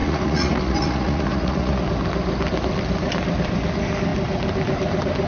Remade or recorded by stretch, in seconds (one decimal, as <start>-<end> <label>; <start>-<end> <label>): 0.0-1.8 remade; 1.8-5.3 recorded